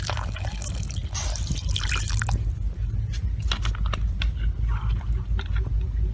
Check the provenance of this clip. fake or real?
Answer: real